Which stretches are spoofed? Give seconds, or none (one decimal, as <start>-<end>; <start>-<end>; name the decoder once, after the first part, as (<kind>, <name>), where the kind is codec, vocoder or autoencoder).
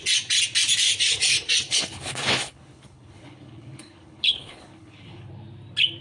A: 1.7-5.3 (codec, HILCodec)